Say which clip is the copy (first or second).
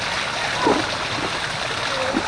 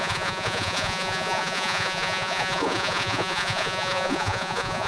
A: second